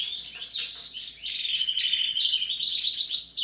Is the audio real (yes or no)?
yes